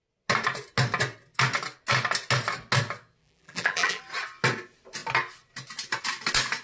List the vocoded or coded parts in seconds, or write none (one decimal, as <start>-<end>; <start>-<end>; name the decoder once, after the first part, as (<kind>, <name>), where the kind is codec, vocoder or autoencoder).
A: 3.2-4.0 (vocoder, BigVGAN v2)